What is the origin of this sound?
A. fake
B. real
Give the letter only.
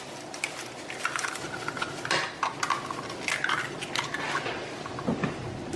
B